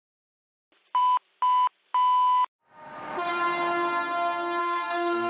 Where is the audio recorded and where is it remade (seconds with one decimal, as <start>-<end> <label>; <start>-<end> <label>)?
0.0-4.6 recorded; 4.6-5.3 remade